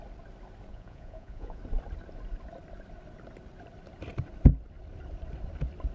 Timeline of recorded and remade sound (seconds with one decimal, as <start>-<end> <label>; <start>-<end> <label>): 0.0-0.7 recorded; 0.7-1.6 remade; 1.6-5.9 recorded